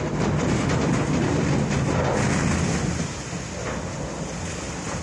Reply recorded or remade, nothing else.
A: recorded